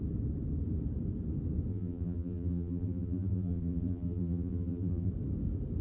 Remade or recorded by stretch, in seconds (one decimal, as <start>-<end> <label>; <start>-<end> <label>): 0.0-1.7 recorded; 1.7-5.1 remade; 5.1-5.8 recorded